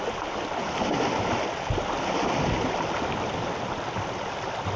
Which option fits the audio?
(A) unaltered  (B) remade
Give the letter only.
A